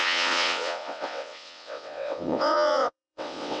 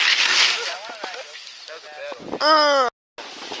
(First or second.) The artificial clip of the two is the first